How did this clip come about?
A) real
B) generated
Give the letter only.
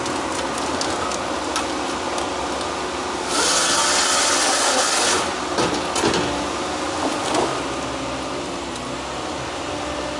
A